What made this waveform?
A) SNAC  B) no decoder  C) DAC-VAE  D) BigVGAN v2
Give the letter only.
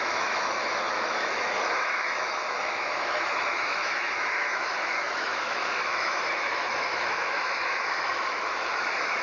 C